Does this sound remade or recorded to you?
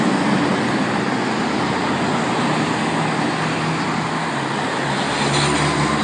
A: recorded